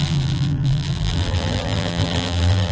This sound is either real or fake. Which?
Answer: fake